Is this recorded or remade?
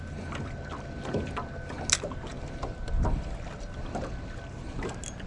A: recorded